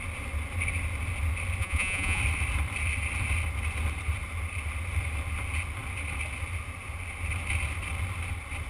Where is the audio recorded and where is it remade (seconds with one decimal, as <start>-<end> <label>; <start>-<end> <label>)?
0.0-1.6 recorded; 1.6-2.2 remade; 2.2-8.7 recorded